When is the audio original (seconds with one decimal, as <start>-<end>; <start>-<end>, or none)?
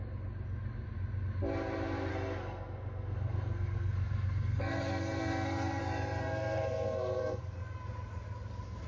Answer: 0.0-2.1; 5.8-6.2; 7.4-8.9